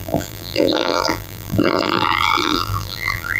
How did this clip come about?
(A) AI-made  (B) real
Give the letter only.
A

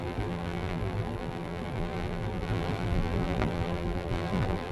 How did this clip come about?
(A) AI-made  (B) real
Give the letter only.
A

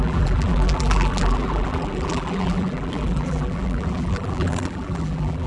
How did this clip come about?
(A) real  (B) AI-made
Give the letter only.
B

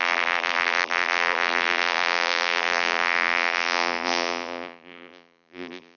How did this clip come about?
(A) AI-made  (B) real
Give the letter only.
A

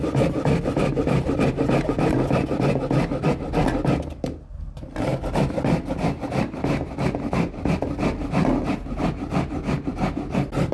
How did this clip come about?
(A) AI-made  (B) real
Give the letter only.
B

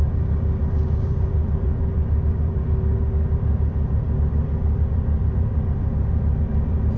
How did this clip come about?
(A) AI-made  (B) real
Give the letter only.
A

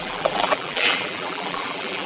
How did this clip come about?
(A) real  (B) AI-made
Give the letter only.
B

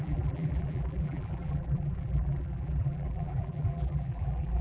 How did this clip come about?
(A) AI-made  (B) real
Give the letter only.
A